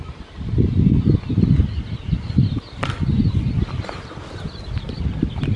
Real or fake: real